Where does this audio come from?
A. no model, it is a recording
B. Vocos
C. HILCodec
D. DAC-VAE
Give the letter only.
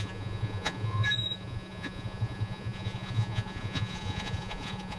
B